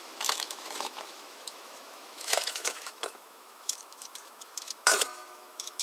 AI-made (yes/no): yes